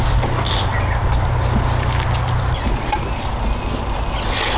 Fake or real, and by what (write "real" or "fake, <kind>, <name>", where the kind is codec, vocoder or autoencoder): real